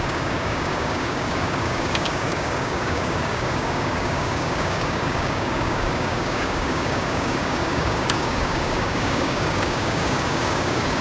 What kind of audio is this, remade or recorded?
remade